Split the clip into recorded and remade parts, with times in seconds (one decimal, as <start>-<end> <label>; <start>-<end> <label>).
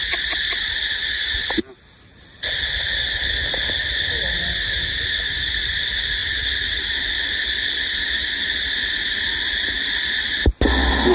0.0-11.1 recorded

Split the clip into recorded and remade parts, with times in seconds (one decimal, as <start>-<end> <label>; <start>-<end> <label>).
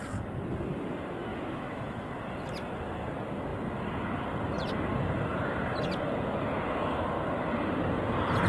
0.0-1.3 recorded; 1.3-2.1 remade; 2.1-8.5 recorded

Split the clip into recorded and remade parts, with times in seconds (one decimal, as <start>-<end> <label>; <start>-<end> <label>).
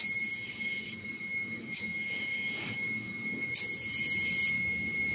0.0-0.4 recorded; 0.4-3.5 remade; 3.5-5.1 recorded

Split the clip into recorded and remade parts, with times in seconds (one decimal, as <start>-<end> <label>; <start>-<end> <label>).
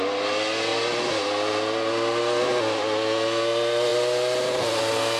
0.0-5.2 recorded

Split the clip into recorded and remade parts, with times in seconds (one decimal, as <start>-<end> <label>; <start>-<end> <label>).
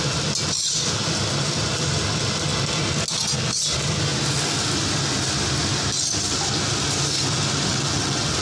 0.0-7.7 recorded; 7.7-8.4 remade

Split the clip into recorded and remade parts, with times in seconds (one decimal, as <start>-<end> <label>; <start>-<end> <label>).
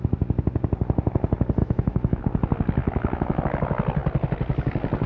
0.0-1.6 recorded; 1.6-2.2 remade; 2.2-2.8 recorded; 2.8-3.4 remade; 3.4-5.1 recorded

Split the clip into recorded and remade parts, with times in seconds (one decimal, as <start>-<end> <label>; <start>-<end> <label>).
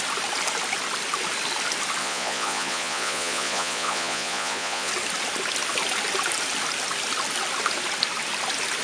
0.0-2.0 recorded; 2.0-4.9 remade; 4.9-8.8 recorded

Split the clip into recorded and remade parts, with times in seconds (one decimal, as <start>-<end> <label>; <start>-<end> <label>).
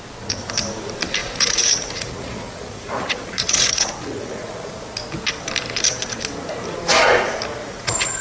0.0-1.2 recorded; 1.2-4.7 remade; 4.7-7.6 recorded; 7.6-8.2 remade